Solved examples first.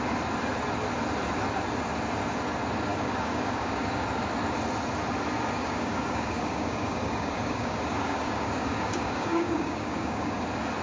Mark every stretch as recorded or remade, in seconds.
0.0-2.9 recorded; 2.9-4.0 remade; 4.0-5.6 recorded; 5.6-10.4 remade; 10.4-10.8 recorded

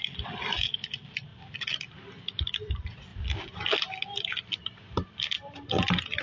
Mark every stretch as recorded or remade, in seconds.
0.0-6.2 recorded

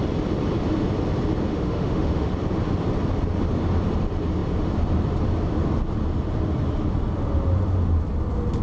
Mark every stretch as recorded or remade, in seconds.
0.0-1.5 recorded; 1.5-2.3 remade; 2.3-8.6 recorded

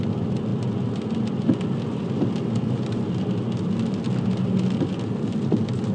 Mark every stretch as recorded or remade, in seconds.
0.0-5.9 recorded